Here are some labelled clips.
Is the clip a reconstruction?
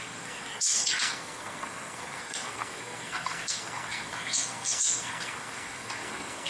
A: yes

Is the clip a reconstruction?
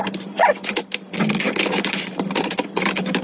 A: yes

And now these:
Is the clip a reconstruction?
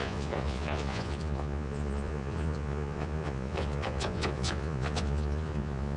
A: yes